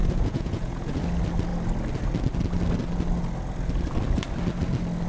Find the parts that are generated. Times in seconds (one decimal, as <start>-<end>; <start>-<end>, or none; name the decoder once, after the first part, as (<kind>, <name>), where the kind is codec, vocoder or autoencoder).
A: 0.0-1.0 (vocoder, Vocos)